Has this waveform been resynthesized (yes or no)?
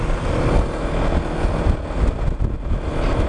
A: no